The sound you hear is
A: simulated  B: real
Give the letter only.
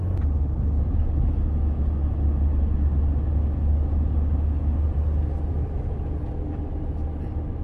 B